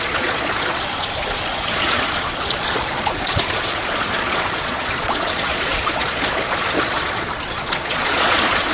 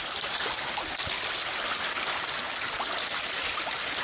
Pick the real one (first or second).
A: second